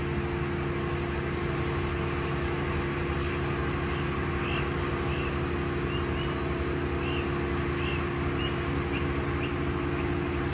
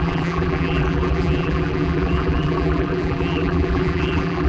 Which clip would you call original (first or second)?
first